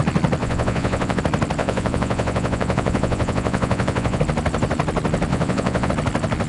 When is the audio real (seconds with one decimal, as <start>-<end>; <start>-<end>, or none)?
0.0-0.4; 1.2-1.6; 4.2-5.3; 5.9-6.5